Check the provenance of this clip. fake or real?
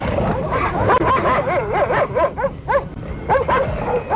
real